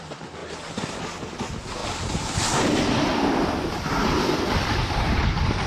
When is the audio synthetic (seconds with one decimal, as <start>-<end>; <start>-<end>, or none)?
0.4-1.0; 1.8-5.2